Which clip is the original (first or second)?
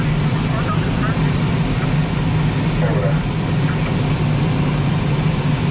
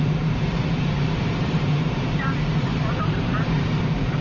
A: first